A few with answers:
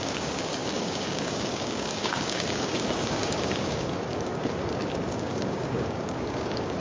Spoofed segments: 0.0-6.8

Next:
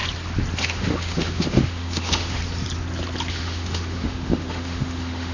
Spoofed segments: 0.6-2.4; 3.3-5.3

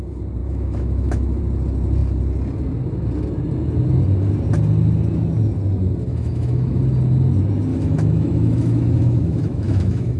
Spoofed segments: 0.4-1.4; 6.1-6.8; 7.7-10.2